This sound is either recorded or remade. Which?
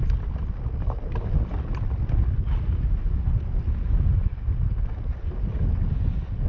recorded